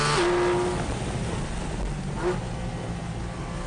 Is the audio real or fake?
real